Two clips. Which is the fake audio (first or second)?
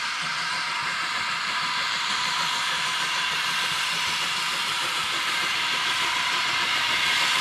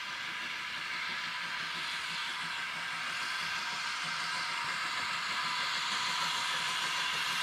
first